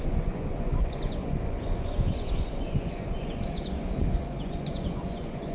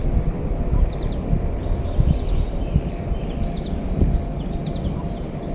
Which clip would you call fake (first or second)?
first